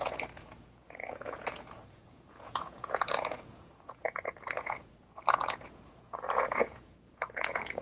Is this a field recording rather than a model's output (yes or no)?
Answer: no